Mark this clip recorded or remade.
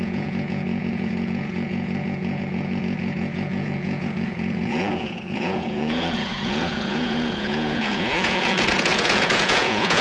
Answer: remade